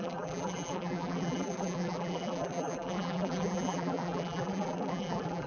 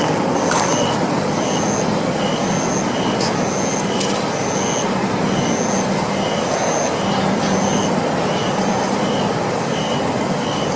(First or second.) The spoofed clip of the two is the first